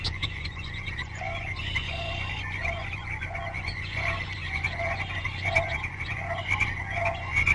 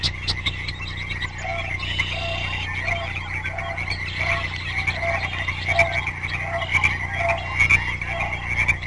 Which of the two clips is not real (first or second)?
first